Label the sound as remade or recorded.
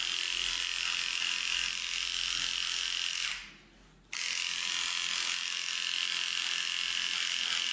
recorded